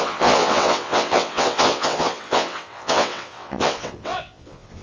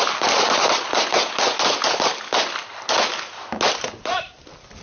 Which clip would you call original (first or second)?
second